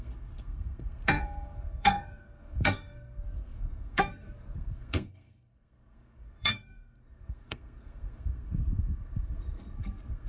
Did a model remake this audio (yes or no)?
yes